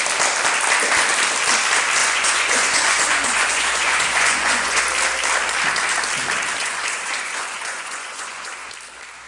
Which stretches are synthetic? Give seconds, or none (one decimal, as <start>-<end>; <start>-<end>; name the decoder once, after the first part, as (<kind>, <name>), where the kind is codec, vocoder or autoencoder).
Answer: 2.0-4.8 (vocoder, Vocos); 6.6-8.5